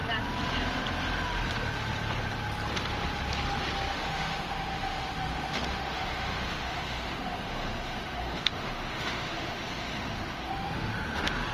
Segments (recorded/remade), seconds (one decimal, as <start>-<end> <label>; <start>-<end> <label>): 0.0-3.9 recorded; 3.9-11.5 remade